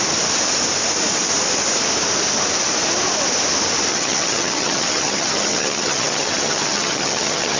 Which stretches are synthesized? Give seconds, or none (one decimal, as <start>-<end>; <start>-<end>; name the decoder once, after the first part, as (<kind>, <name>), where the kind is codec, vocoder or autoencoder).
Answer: 3.9-7.6 (vocoder, HiFi-GAN)